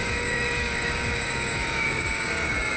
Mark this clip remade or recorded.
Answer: remade